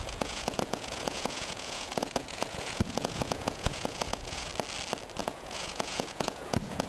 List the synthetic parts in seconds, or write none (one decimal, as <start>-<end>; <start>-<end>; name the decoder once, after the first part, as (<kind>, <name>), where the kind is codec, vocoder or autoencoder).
0.0-4.5 (vocoder, Vocos); 5.2-6.9